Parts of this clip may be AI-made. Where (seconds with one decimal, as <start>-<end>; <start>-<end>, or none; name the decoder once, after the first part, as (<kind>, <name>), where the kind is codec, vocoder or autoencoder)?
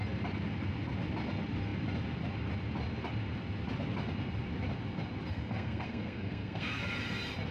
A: 5.3-6.7 (codec, SNAC)